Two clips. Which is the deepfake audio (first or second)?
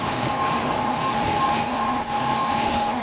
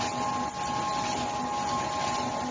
first